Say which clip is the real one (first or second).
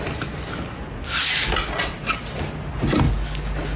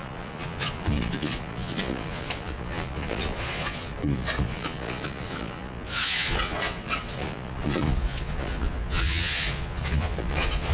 first